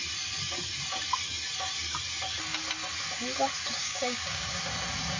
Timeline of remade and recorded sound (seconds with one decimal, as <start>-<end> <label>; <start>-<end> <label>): 0.0-3.8 recorded; 3.8-4.6 remade; 4.6-5.2 recorded